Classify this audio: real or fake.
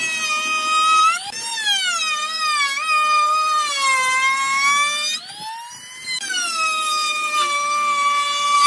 real